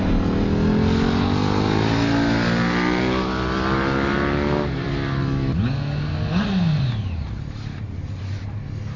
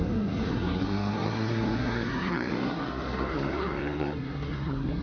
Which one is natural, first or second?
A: first